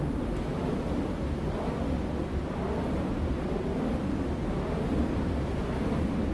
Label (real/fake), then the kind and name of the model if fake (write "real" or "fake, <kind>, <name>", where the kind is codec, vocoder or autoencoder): real